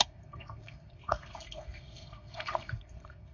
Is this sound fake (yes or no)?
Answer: yes